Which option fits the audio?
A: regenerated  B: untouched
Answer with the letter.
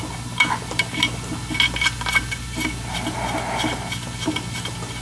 B